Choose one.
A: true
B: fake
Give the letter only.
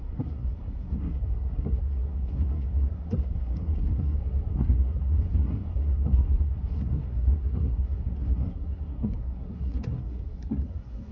B